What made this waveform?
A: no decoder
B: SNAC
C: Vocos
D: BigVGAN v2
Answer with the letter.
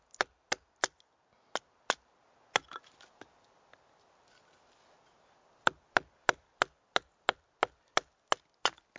A